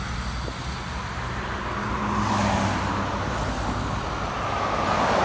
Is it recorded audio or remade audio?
recorded